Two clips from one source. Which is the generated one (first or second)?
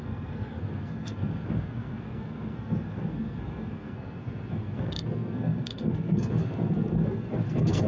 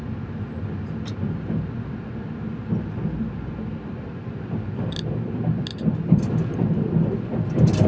first